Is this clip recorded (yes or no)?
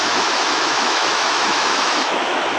no